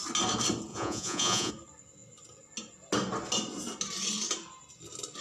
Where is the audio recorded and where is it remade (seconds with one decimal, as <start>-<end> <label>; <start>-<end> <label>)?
0.0-0.7 recorded; 0.7-1.5 remade; 1.5-5.2 recorded